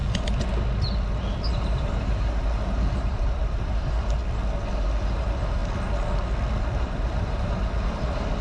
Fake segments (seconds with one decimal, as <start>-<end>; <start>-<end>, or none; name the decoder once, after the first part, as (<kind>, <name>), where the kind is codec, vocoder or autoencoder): 1.5-4.2 (vocoder, BigVGAN v2); 5.0-5.6; 6.8-8.4